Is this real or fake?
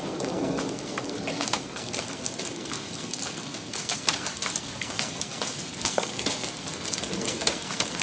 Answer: fake